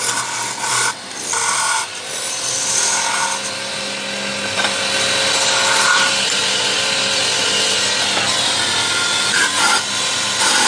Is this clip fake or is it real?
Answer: real